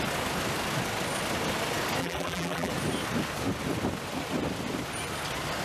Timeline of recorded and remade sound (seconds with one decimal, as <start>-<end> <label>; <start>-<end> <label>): 0.0-2.0 recorded; 2.0-2.7 remade; 2.7-5.6 recorded